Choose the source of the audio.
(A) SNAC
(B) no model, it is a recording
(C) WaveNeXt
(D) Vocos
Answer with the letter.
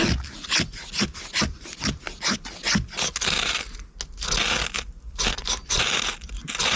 B